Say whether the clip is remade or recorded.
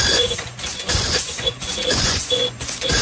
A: remade